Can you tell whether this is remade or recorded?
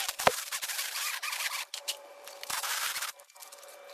remade